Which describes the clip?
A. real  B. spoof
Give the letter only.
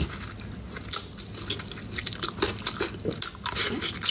A